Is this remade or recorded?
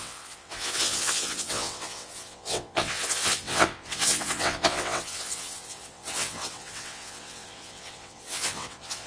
remade